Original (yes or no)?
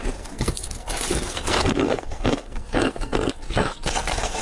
no